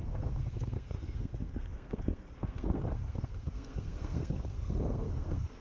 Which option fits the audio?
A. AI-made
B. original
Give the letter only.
A